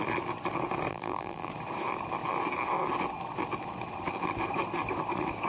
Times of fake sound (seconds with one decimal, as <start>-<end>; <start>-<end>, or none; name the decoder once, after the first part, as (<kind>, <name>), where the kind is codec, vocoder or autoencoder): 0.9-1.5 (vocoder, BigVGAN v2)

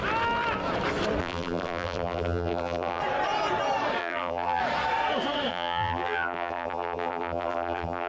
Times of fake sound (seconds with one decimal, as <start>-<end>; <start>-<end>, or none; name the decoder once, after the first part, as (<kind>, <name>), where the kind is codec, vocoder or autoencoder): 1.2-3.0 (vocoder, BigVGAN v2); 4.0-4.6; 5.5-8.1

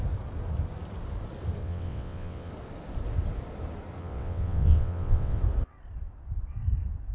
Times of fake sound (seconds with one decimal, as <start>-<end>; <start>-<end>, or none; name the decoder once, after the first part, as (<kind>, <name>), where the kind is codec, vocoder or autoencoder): 1.6-2.5 (vocoder, WaveNeXt); 4.0-5.4